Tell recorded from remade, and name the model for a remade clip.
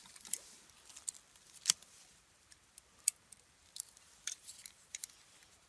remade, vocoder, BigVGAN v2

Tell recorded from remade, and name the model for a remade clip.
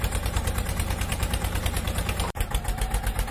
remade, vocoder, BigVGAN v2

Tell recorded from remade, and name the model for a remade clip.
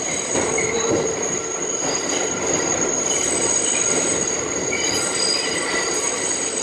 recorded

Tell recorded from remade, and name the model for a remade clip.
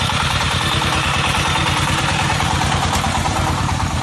remade, vocoder, BigVGAN v2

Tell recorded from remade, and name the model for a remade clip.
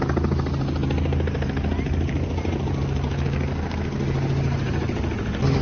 recorded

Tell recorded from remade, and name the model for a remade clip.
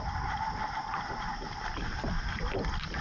recorded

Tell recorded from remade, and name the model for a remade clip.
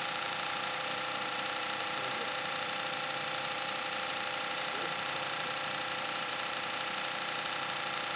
remade, vocoder, BigVGAN v2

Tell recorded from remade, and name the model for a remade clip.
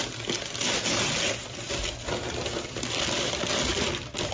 recorded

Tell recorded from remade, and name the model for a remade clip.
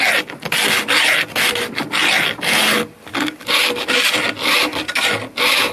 recorded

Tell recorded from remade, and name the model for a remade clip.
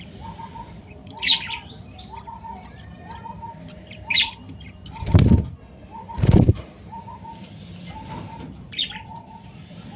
remade, vocoder, BigVGAN v2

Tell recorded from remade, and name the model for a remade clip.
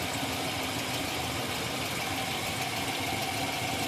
recorded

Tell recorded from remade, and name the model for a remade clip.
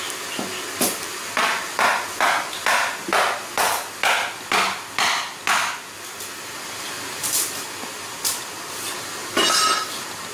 recorded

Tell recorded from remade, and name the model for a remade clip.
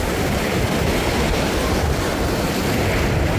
remade, vocoder, BigVGAN v2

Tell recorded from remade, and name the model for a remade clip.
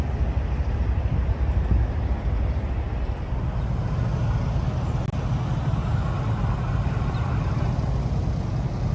recorded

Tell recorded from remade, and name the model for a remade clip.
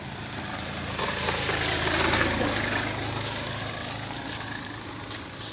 recorded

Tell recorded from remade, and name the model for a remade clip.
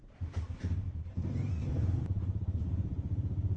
remade, vocoder, BigVGAN v2